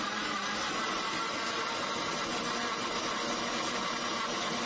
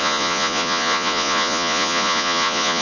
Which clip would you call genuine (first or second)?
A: first